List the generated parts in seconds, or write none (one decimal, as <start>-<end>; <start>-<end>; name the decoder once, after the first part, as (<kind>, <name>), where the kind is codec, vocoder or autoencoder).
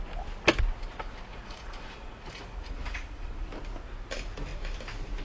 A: 1.3-3.5 (vocoder, Vocos)